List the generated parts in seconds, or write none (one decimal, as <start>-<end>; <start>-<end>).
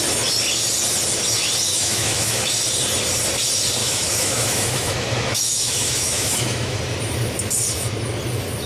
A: 1.7-2.5; 3.8-6.8